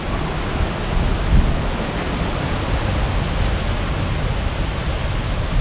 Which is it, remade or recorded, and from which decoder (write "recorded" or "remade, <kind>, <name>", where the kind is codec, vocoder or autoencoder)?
recorded